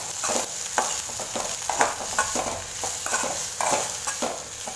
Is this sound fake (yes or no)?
no